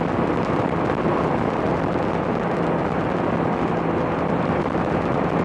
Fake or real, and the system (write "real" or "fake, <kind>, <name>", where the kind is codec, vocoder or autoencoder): real